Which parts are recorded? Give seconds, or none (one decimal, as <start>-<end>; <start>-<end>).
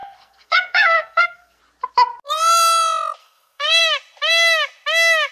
1.6-3.2; 3.8-5.3